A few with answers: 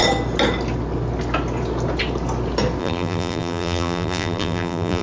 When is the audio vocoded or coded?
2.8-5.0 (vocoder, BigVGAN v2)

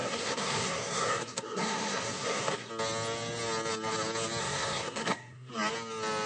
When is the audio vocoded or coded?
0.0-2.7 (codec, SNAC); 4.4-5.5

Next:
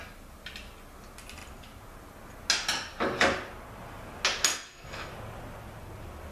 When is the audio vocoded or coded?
4.5-5.1 (codec, SNAC)

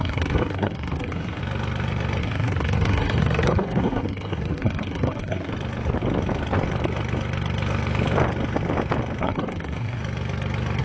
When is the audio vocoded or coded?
0.0-1.4 (codec, SNAC); 2.2-5.5; 9.2-10.0

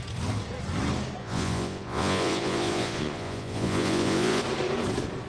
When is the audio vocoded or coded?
1.2-4.4 (vocoder, Vocos)

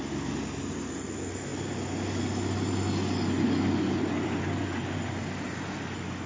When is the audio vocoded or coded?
none